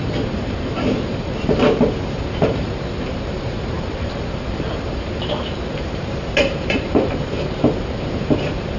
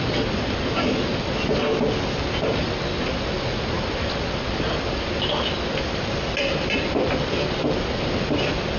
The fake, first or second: first